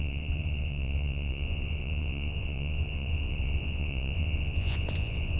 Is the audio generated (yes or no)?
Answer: yes